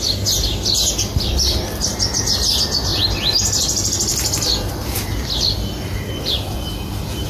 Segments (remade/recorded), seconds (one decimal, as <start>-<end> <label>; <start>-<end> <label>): 0.0-7.3 recorded